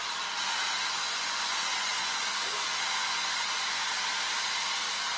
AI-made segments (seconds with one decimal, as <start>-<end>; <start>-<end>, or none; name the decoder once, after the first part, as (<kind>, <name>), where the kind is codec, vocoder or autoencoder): 0.8-3.9 (vocoder, Vocos)